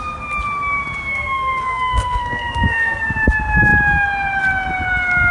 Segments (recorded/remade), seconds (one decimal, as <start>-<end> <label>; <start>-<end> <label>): 0.0-1.1 recorded; 1.1-3.0 remade; 3.0-5.3 recorded